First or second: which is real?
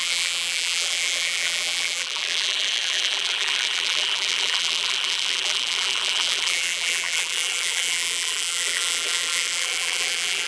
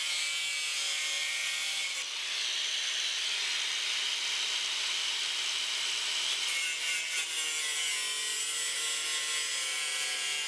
second